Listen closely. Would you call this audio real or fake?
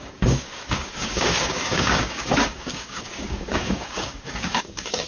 fake